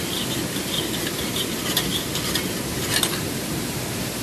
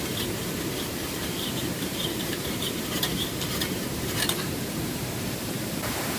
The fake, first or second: second